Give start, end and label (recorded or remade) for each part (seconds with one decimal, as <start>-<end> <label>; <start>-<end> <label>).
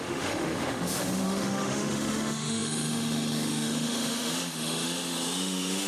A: 0.0-5.9 remade